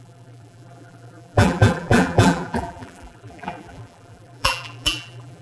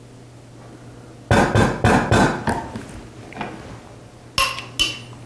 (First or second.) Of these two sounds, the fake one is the first